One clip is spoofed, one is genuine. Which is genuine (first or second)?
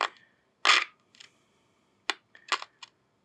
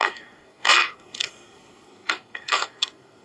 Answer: first